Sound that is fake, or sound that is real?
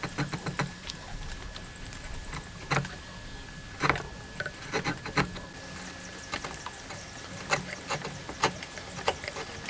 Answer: real